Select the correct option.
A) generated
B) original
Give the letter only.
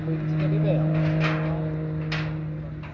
B